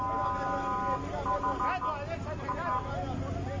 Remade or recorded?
recorded